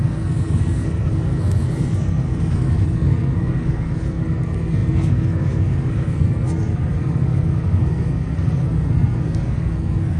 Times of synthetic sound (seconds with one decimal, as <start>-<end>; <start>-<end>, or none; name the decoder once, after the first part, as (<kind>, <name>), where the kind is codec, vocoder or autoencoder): 0.0-10.2 (codec, SNAC)

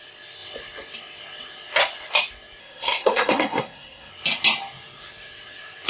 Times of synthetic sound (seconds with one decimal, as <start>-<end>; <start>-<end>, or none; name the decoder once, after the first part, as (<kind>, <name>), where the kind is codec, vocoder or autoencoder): 2.6-4.1 (codec, SNAC)

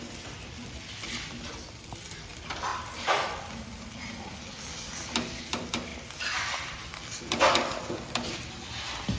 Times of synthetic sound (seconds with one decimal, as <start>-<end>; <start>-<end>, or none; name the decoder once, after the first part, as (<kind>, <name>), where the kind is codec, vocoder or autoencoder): none